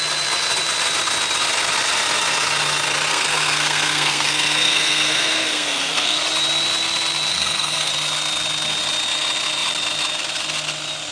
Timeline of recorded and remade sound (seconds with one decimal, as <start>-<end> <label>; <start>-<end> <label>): 0.0-3.1 recorded; 3.1-6.2 remade; 6.2-7.3 recorded; 7.3-7.9 remade; 7.9-11.1 recorded